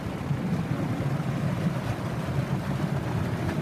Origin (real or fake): real